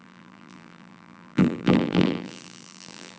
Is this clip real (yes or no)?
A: no